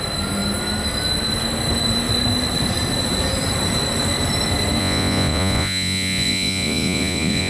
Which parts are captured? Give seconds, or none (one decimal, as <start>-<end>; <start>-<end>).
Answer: 0.0-4.8